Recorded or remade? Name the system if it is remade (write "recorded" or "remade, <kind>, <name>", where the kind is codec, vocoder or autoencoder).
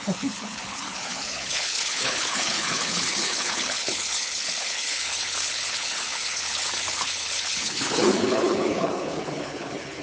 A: remade, codec, HILCodec